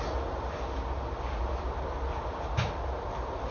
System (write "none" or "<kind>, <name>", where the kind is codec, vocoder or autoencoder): none